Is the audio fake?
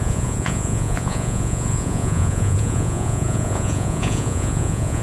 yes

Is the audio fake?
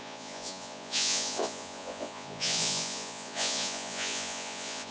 yes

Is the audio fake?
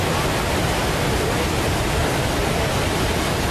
no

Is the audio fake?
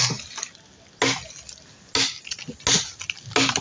no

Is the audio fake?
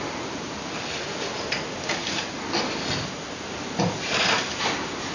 no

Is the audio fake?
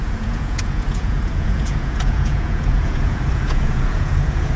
yes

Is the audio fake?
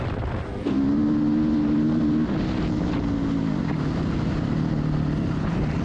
no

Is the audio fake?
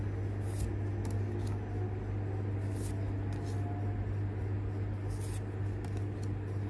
no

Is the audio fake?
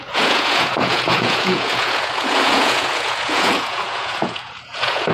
yes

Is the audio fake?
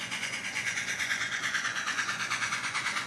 yes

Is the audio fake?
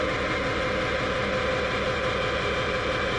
no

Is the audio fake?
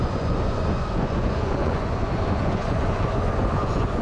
yes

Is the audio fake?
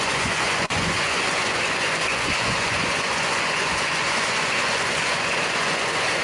yes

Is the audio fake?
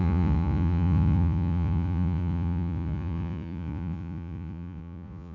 yes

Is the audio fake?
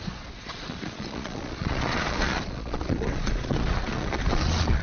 yes